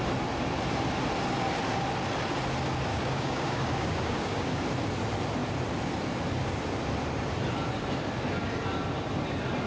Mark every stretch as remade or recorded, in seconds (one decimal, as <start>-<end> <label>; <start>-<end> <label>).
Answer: 0.0-2.9 recorded; 2.9-4.6 remade; 4.6-9.7 recorded